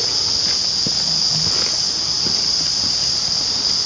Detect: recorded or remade recorded